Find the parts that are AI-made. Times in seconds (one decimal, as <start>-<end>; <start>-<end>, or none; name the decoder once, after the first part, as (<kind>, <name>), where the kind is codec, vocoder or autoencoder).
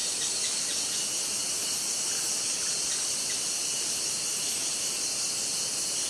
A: 2.8-4.9 (vocoder, BigVGAN v2)